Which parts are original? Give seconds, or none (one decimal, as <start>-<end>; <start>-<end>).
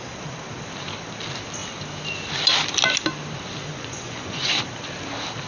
0.0-3.6; 4.5-5.5